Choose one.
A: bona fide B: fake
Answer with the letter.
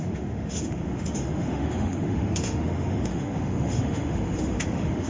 B